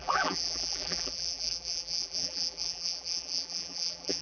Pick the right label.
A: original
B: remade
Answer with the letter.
B